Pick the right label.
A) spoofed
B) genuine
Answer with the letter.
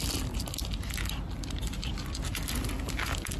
B